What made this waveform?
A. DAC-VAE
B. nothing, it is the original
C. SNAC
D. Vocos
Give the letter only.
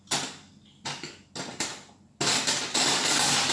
B